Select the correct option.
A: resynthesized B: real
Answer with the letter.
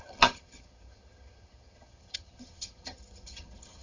A